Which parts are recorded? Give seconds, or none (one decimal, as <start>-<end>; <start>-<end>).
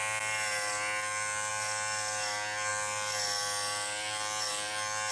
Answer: 0.0-5.1